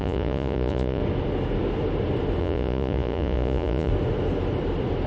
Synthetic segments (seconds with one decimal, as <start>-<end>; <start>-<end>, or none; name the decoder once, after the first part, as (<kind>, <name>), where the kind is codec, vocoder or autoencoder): 0.0-1.0 (vocoder, Vocos); 2.4-3.9